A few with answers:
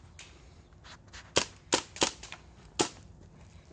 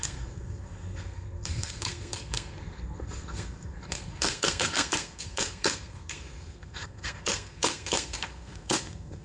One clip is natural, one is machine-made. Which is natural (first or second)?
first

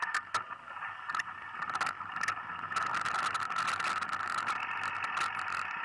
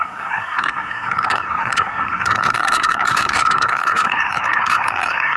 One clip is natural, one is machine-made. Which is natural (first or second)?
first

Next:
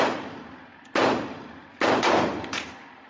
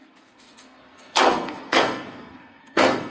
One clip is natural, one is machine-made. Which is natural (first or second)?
first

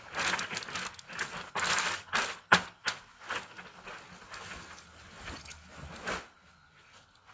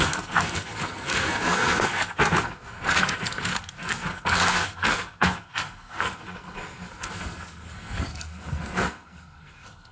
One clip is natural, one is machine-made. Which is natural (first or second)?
first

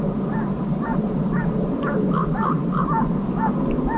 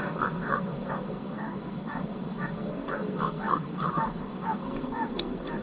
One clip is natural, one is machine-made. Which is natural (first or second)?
first